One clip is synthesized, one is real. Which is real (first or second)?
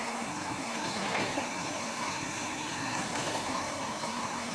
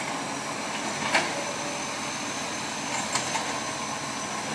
second